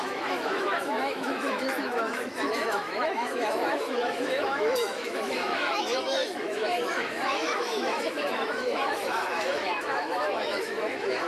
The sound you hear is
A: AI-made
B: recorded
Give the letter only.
A